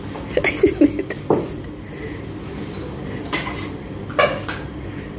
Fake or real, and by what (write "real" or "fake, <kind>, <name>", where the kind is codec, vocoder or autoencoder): real